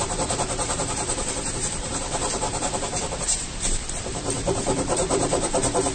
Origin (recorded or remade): remade